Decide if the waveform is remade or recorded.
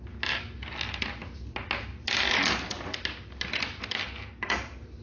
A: recorded